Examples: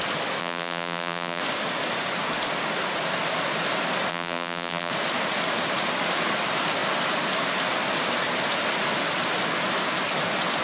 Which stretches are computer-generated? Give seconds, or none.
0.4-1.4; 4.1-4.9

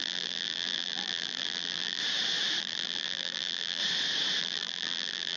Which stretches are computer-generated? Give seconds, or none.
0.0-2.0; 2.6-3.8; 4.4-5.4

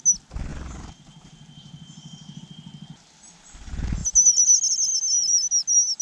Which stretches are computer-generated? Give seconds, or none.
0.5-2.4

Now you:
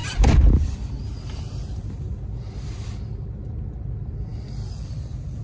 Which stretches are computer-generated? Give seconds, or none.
0.0-5.4